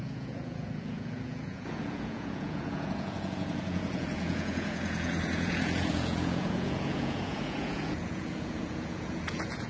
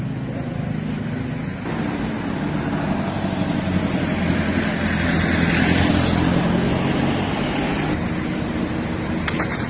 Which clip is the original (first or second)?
second